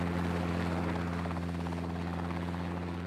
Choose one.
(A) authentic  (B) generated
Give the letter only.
A